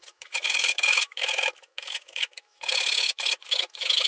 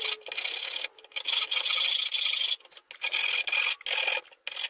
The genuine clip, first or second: second